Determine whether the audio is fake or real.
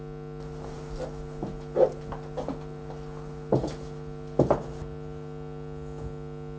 real